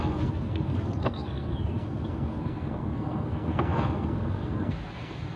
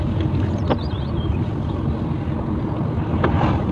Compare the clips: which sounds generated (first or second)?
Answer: first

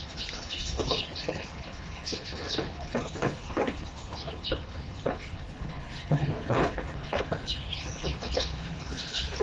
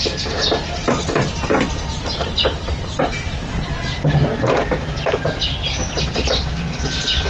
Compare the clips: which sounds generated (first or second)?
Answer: first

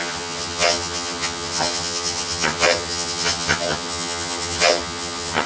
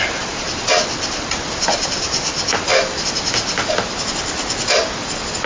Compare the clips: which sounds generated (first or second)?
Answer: first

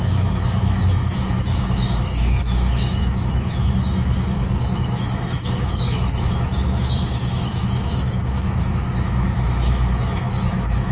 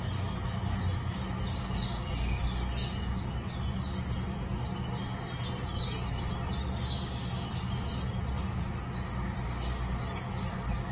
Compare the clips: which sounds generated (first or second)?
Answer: first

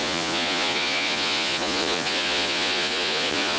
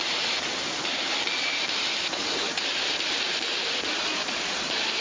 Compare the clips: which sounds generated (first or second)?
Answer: first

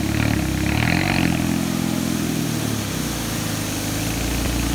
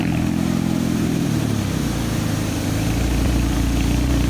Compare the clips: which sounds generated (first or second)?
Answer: second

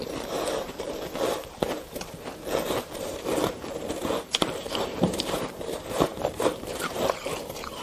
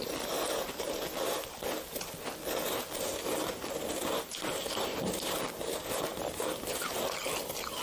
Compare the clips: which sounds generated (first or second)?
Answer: first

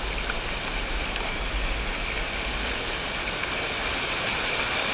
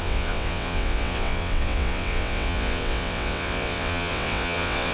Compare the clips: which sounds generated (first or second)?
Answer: second